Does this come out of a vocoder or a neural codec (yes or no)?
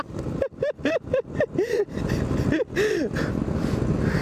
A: no